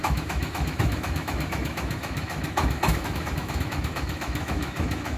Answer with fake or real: fake